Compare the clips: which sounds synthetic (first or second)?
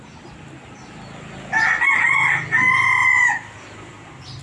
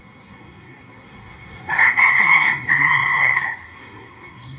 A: second